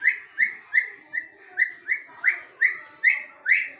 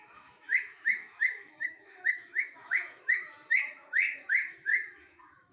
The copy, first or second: second